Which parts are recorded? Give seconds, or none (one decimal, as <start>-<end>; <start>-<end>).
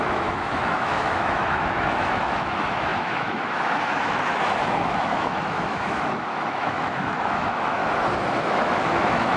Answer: 7.8-8.4